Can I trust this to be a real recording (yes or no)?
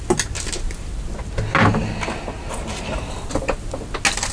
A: yes